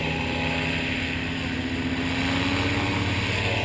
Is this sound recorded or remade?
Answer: recorded